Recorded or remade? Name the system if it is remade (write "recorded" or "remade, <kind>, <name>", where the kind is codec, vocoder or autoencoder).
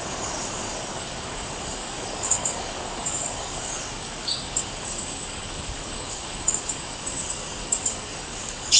remade, codec, DAC